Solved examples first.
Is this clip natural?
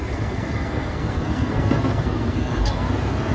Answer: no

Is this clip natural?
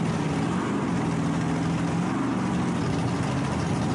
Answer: yes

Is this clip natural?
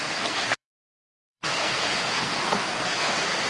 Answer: no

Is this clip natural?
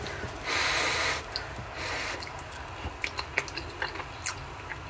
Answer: yes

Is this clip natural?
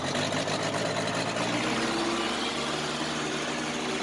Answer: yes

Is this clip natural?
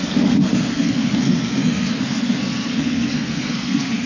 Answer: no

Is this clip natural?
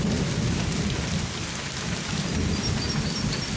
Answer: yes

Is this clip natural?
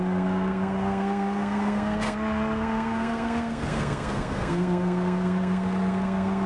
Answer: no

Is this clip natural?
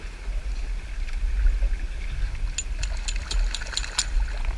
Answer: yes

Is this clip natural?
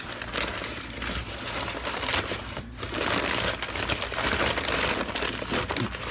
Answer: yes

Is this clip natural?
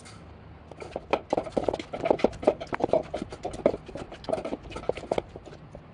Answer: yes